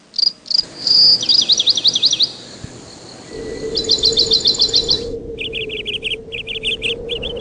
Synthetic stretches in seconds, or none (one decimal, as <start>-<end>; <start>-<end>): none